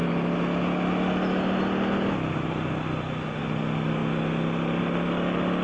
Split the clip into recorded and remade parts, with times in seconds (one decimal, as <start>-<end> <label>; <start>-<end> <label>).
0.0-5.6 recorded